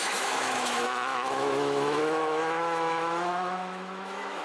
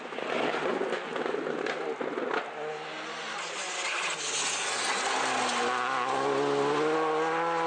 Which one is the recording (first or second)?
second